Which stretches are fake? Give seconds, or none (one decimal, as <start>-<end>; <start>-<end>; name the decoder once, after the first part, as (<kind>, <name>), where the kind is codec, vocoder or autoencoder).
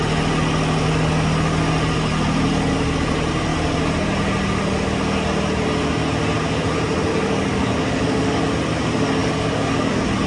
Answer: 7.1-8.4 (codec, DAC); 9.2-9.9